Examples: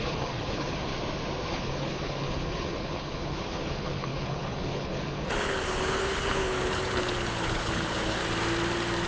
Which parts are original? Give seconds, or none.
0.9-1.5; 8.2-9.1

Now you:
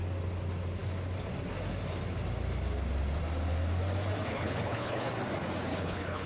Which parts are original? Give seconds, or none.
0.0-4.3; 5.1-5.7

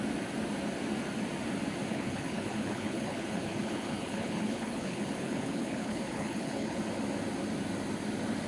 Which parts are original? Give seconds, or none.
0.0-1.9; 6.8-8.5

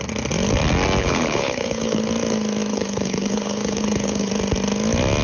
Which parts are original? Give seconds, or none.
0.0-1.0; 2.0-2.7; 4.3-5.2

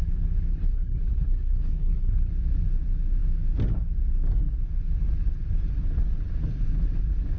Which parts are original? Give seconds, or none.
0.0-0.5; 2.3-7.4

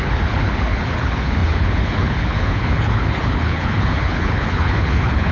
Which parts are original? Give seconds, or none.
none

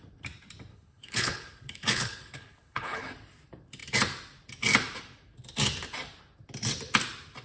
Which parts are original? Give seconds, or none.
0.0-0.7; 3.1-7.4